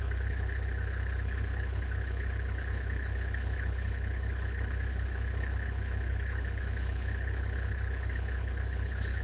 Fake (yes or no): yes